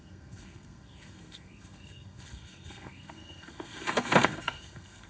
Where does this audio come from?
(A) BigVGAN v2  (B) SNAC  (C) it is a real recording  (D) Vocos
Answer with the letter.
B